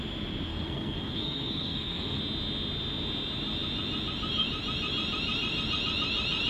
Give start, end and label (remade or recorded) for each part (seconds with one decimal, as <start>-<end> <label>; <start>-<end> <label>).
0.0-0.5 recorded; 0.5-2.2 remade; 2.2-6.5 recorded